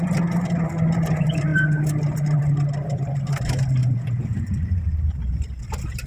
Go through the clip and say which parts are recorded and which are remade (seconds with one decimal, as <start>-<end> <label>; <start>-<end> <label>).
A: 0.0-3.8 recorded; 3.8-4.4 remade; 4.4-6.1 recorded